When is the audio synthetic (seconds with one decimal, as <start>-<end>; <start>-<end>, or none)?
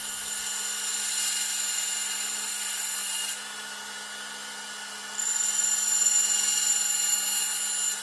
none